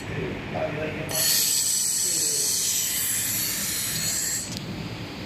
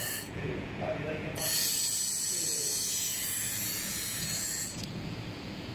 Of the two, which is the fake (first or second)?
second